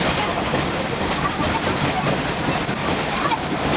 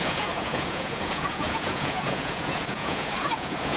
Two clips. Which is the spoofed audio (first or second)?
second